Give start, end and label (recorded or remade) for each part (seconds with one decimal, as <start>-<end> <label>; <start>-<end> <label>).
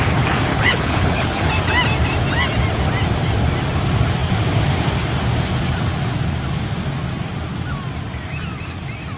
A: 0.0-0.5 recorded; 0.5-1.4 remade; 1.4-9.2 recorded